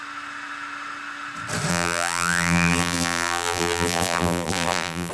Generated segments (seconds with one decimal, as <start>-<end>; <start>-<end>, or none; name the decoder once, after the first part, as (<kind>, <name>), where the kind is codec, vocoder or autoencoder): 1.7-5.1 (vocoder, BigVGAN v2)